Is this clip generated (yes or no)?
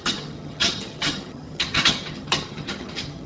yes